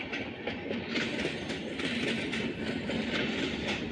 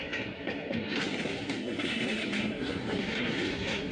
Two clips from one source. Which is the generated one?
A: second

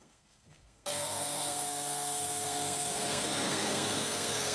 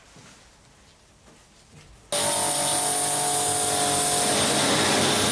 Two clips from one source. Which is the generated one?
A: first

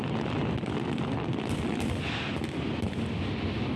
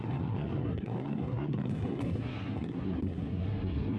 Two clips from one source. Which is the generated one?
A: second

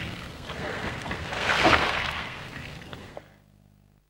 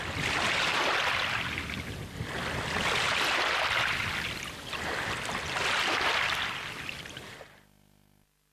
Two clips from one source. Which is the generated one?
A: first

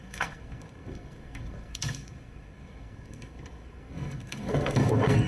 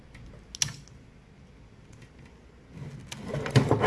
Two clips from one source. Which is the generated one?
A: first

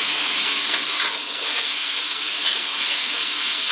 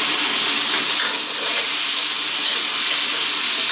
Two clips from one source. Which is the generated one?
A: first